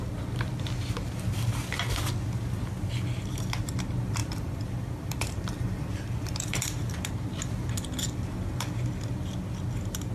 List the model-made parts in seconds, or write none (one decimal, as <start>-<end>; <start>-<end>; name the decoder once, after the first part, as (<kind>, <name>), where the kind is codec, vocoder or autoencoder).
4.2-7.1 (vocoder, BigVGAN v2)